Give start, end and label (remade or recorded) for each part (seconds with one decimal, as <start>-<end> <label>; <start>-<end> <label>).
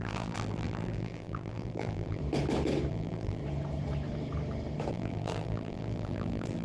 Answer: 0.0-2.2 remade; 2.2-2.9 recorded; 2.9-3.4 remade; 3.4-4.9 recorded; 4.9-6.6 remade